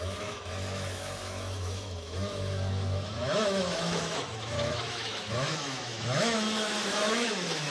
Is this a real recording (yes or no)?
no